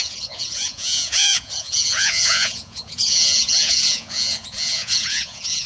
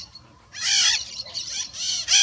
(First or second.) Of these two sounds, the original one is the second